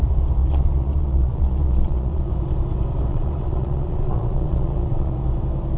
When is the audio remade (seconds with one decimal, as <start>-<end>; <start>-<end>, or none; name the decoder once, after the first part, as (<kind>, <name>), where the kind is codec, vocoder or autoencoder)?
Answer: 0.4-2.3 (vocoder, Vocos); 3.1-5.1